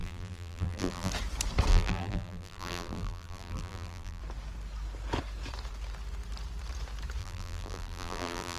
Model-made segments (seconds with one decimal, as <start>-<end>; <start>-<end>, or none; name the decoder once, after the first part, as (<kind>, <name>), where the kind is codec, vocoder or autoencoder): 0.0-1.1 (vocoder, BigVGAN v2); 1.7-4.2; 7.2-8.6